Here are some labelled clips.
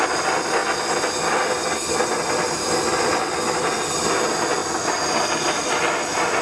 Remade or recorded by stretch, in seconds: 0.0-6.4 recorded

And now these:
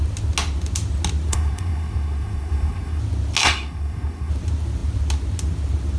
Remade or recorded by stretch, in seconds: 0.0-1.3 recorded; 1.3-3.0 remade; 3.0-3.4 recorded; 3.4-4.3 remade; 4.3-6.0 recorded